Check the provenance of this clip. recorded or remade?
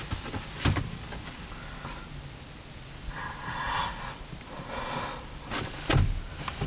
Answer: recorded